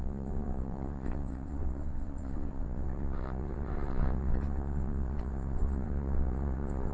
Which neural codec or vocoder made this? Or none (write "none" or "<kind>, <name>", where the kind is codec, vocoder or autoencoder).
vocoder, WaveNeXt